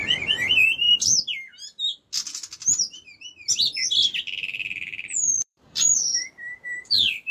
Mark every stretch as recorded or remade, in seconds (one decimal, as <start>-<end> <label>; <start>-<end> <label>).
0.0-0.7 recorded; 0.7-1.1 remade; 1.1-5.3 recorded; 5.3-7.3 remade